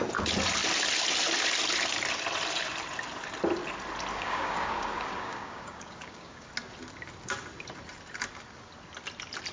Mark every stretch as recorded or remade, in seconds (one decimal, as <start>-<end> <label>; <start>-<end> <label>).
0.0-4.1 recorded; 4.1-6.5 remade; 6.5-9.5 recorded